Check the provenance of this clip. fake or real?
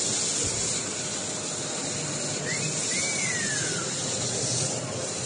real